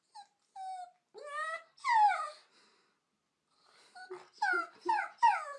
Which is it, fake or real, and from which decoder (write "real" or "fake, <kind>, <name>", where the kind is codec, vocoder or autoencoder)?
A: real